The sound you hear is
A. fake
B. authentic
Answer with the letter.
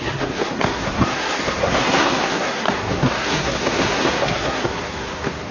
A